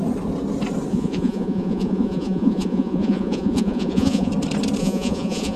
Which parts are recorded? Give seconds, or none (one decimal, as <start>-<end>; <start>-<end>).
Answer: 0.0-0.9; 4.3-4.8